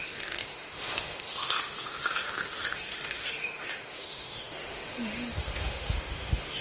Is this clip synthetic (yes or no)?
yes